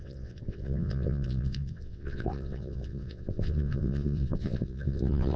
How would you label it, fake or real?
fake